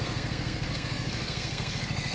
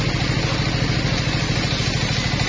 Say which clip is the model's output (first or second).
first